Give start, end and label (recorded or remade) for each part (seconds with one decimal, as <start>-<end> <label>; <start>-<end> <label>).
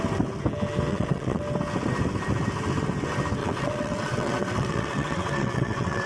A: 0.0-0.9 recorded; 0.9-1.4 remade; 1.4-3.4 recorded; 3.4-6.1 remade